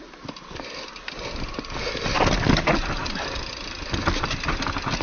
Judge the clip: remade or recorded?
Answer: recorded